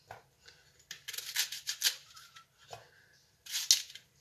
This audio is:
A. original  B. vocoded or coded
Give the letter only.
A